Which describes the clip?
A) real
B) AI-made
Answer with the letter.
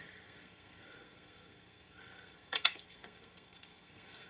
B